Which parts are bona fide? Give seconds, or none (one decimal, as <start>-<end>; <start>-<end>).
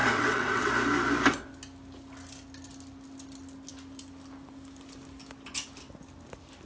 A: 0.7-6.7